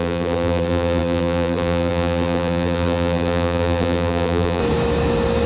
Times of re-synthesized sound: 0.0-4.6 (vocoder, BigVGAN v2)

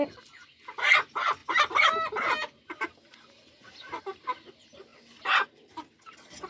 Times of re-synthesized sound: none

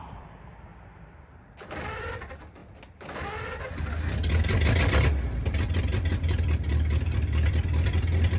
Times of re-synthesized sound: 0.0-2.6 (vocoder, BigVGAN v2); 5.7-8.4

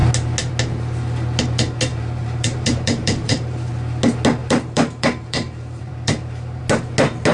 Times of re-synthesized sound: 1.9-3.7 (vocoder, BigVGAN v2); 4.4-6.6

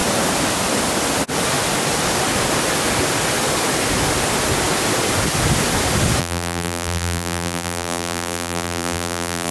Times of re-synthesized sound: 6.2-9.5 (vocoder, BigVGAN v2)

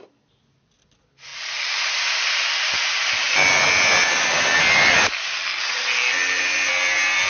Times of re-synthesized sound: none

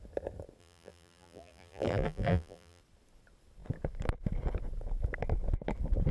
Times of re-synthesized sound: 0.6-2.8 (vocoder, BigVGAN v2)

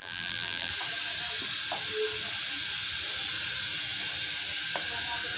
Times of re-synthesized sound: 0.0-0.7 (vocoder, BigVGAN v2)